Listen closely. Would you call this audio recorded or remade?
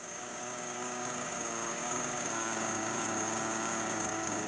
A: remade